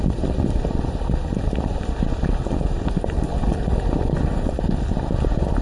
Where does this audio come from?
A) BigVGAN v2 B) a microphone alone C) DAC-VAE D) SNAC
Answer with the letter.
A